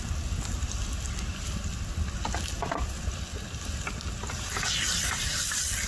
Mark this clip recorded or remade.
recorded